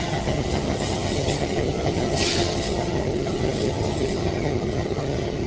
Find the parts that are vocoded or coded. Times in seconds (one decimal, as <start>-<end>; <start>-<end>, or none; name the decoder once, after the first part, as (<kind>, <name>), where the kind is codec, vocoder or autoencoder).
0.0-5.5 (vocoder, HiFi-GAN)